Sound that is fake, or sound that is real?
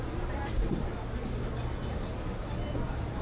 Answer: real